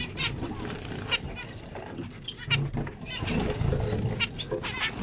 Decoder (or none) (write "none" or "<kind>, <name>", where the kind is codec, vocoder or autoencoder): none